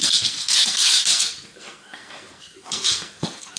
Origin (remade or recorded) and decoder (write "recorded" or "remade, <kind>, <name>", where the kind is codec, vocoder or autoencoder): remade, codec, SNAC